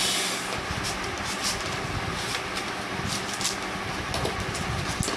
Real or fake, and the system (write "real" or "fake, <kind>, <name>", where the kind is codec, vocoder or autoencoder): real